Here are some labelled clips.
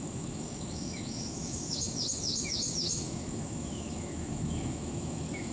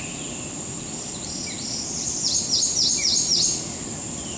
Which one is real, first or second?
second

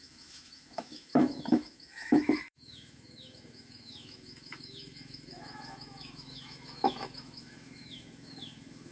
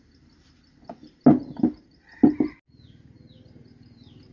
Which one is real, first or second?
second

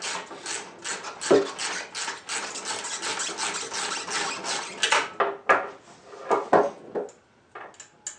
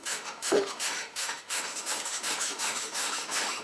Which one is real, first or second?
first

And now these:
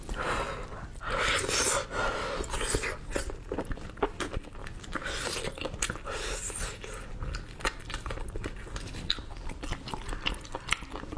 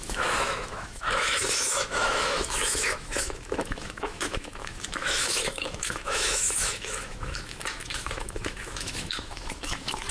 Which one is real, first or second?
first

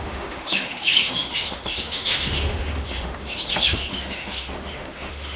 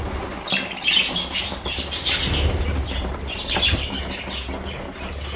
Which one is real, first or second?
second